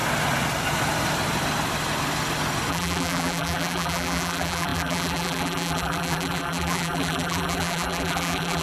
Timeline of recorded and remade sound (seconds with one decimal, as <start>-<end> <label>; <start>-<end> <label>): 0.0-2.7 recorded; 2.7-8.6 remade